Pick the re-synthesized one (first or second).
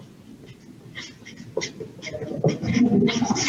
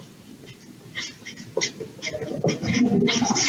second